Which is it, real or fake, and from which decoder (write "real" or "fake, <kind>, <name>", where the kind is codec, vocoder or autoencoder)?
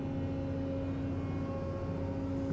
real